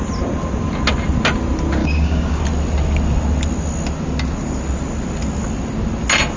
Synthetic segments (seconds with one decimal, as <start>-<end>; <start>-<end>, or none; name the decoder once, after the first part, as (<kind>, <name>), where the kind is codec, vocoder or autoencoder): 1.8-2.4 (codec, DAC)